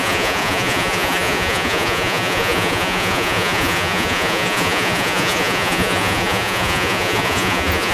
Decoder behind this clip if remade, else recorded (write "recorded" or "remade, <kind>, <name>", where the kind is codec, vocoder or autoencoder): remade, vocoder, Vocos